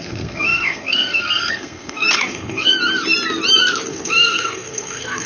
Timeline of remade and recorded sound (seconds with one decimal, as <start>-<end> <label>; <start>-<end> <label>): 0.0-2.7 remade; 2.7-3.9 recorded; 3.9-5.3 remade